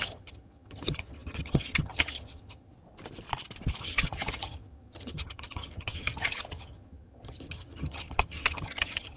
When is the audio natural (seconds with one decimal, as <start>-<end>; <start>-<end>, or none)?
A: 2.7-3.8